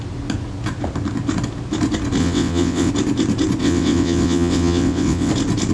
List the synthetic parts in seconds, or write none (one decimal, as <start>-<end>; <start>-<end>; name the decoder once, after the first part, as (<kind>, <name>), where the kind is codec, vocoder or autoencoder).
2.2-2.9 (vocoder, WaveNeXt); 3.6-5.3